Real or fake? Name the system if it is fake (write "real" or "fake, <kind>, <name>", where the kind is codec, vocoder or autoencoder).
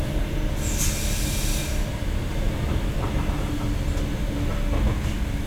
real